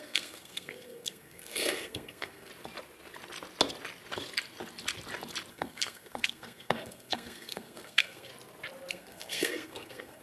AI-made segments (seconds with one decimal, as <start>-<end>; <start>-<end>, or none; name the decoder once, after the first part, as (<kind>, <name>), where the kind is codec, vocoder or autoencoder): 0.0-2.5 (codec, SNAC); 5.5-8.3; 8.9-10.2